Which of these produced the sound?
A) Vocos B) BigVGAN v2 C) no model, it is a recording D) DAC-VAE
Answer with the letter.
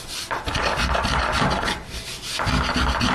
C